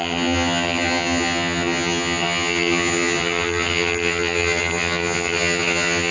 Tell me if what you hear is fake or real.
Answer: fake